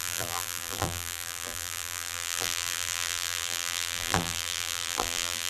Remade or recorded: remade